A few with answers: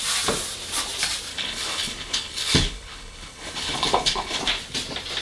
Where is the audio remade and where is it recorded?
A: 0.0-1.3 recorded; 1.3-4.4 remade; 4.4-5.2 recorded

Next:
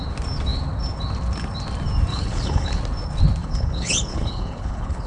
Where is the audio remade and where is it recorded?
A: 0.0-2.1 recorded; 2.1-2.8 remade; 2.8-3.4 recorded; 3.4-5.1 remade

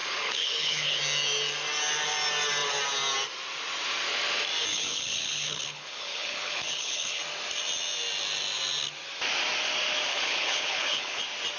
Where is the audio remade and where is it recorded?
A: 0.0-1.0 remade; 1.0-4.7 recorded; 4.7-7.2 remade; 7.2-10.1 recorded; 10.1-11.2 remade; 11.2-11.6 recorded

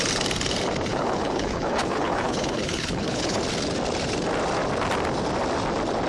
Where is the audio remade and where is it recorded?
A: 0.0-0.9 recorded; 0.9-3.4 remade; 3.4-6.1 recorded